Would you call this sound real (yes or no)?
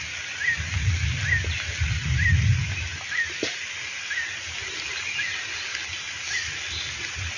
yes